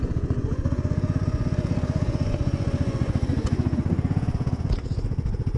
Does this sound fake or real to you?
fake